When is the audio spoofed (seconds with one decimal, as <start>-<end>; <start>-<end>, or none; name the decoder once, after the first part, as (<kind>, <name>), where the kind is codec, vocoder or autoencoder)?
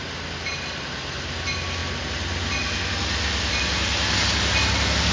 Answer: none